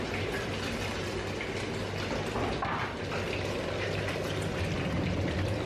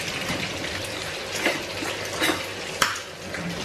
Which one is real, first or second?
first